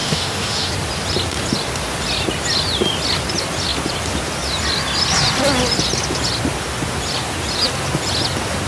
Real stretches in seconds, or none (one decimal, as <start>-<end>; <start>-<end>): 0.7-8.7